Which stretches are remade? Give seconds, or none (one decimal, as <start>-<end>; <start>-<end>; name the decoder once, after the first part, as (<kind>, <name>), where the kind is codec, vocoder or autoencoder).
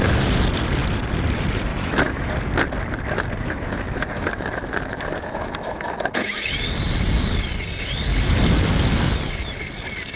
1.7-2.3 (autoencoder, DAC-VAE); 3.4-6.5